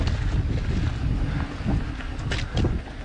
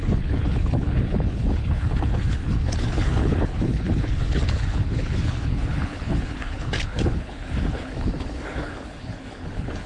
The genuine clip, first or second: first